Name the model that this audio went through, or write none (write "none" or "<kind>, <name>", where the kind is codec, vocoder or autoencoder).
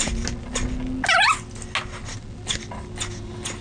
none